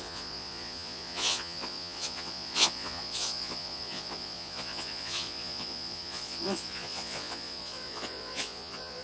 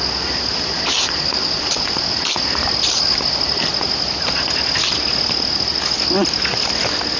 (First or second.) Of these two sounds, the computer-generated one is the first